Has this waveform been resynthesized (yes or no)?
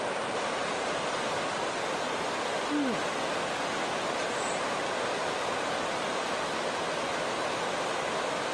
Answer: no